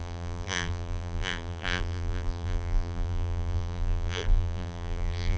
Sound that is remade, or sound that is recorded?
remade